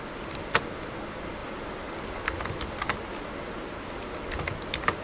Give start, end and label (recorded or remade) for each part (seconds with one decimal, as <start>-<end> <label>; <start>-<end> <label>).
0.0-5.0 recorded